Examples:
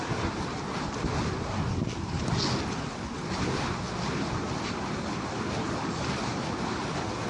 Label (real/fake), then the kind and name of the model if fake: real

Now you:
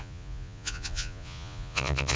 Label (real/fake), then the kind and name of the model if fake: fake, vocoder, Vocos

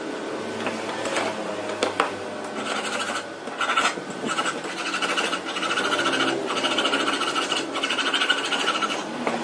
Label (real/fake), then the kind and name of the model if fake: real